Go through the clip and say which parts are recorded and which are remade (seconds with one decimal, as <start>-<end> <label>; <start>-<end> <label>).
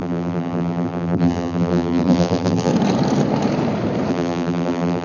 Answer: 0.0-2.7 remade; 2.7-4.1 recorded; 4.1-5.0 remade